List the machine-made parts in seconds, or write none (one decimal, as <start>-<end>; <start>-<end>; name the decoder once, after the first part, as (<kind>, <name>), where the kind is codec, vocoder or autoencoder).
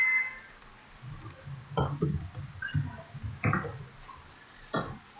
none